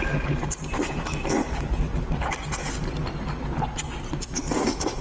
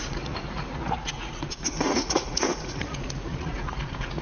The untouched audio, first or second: first